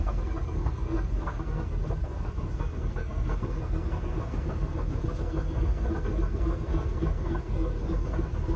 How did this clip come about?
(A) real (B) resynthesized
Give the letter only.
B